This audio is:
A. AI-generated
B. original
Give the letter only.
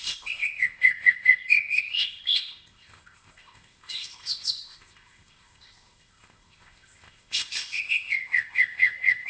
A